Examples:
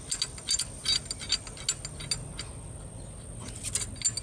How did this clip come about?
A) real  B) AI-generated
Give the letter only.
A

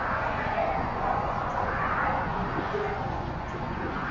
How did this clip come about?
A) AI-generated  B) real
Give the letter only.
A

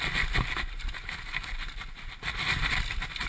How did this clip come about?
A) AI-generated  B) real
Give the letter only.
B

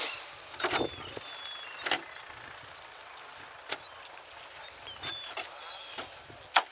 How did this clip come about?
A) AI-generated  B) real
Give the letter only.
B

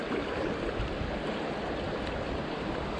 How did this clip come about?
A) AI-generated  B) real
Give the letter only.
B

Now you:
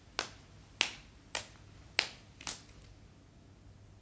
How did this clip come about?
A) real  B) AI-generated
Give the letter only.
A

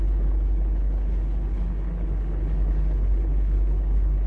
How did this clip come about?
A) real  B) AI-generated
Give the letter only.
B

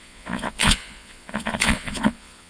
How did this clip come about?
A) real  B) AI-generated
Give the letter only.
B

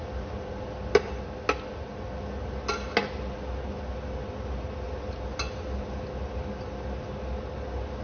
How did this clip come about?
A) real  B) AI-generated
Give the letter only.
A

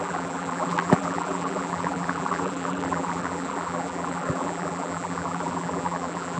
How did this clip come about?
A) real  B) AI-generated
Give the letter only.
B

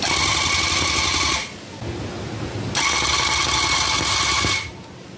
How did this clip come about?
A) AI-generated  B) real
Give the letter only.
B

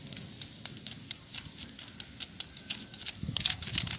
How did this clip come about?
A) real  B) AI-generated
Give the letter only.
A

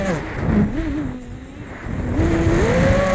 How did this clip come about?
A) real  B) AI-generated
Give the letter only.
A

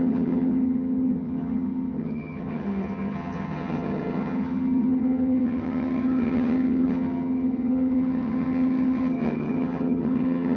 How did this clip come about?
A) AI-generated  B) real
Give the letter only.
A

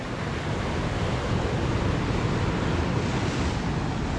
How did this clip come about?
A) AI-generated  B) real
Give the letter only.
B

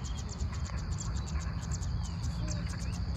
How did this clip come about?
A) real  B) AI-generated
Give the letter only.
A